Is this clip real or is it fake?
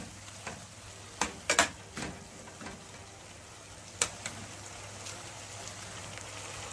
real